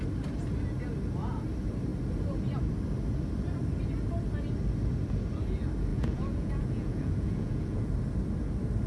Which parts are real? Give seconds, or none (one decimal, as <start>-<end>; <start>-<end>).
0.0-5.9; 7.9-8.9